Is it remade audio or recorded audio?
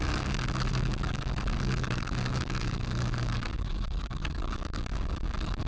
remade